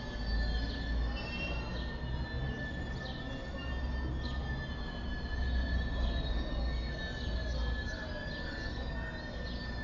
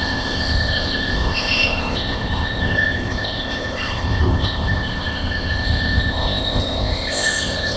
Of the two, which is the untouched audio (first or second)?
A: first